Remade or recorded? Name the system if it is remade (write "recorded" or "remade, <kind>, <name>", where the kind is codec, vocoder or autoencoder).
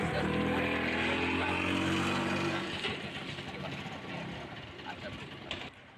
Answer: recorded